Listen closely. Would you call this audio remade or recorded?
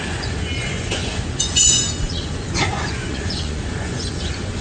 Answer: remade